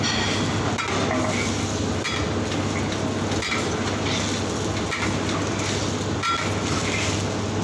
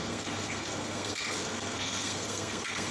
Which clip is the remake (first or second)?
second